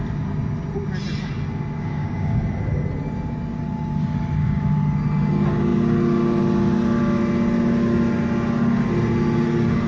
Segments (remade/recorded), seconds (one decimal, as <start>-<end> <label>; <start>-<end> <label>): 0.0-1.9 recorded; 1.9-2.4 remade; 2.4-9.9 recorded